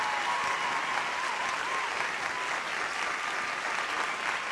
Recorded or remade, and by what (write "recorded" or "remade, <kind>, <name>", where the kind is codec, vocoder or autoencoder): recorded